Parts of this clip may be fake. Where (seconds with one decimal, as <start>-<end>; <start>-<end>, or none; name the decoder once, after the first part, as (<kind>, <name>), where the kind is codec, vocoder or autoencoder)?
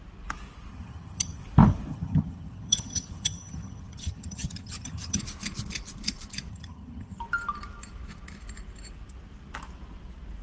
0.7-1.4 (vocoder, HiFi-GAN); 1.9-5.2; 6.5-7.2